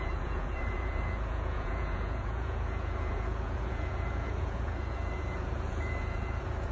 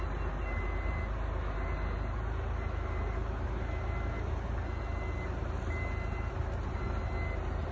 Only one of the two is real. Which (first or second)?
second